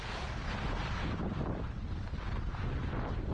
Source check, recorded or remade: recorded